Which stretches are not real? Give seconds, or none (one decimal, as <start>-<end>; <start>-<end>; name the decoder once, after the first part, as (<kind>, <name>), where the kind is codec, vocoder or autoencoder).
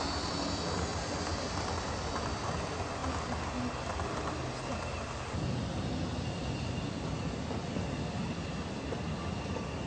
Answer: none